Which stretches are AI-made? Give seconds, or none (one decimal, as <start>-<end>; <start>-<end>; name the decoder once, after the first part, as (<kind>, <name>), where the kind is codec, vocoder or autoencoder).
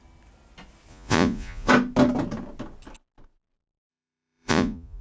0.9-1.7 (vocoder, Vocos); 3.9-5.0